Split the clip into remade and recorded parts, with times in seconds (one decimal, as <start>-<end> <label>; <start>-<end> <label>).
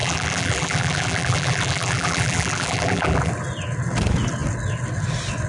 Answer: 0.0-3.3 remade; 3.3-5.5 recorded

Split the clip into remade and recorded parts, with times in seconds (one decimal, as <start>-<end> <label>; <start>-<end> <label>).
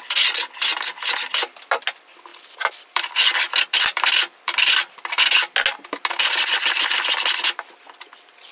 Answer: 0.0-2.3 recorded; 2.3-5.2 remade; 5.2-8.5 recorded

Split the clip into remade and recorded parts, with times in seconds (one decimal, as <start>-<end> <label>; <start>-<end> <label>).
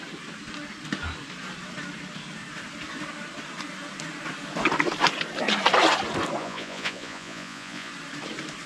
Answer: 0.0-6.4 recorded; 6.4-7.9 remade; 7.9-8.7 recorded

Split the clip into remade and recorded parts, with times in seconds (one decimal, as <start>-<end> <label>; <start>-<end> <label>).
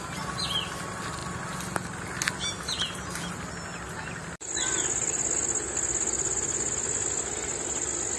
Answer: 0.0-8.2 recorded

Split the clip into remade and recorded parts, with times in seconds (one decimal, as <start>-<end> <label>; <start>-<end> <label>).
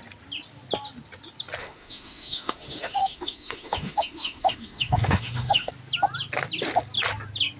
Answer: 0.0-1.6 recorded; 1.6-5.7 remade; 5.7-7.6 recorded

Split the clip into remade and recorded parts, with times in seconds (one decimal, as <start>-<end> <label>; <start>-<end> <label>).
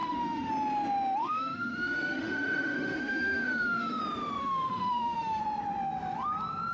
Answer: 0.0-0.5 remade; 0.5-1.2 recorded; 1.2-4.0 remade; 4.0-4.4 recorded; 4.4-5.4 remade; 5.4-6.7 recorded